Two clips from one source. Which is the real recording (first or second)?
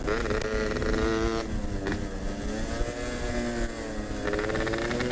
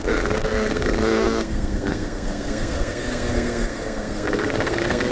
first